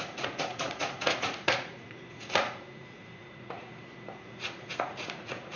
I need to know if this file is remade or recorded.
remade